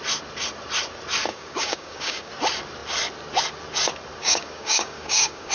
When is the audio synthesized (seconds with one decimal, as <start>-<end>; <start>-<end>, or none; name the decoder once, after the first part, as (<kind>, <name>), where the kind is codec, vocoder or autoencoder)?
1.3-2.3 (codec, DAC); 4.2-5.5